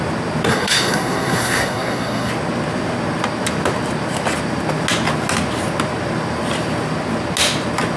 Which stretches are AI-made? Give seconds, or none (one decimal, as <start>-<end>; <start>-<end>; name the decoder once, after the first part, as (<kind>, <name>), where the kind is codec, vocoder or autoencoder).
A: 0.5-2.3 (codec, SNAC)